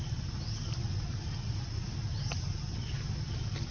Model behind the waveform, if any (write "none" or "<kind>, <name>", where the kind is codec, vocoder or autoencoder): none